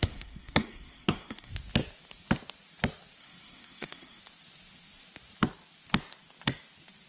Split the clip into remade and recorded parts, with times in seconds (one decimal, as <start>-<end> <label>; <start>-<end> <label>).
0.0-1.5 remade; 1.5-3.2 recorded; 3.2-4.2 remade; 4.2-7.1 recorded